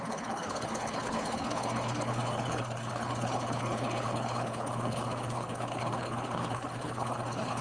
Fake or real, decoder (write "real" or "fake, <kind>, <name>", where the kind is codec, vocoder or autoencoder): fake, codec, HILCodec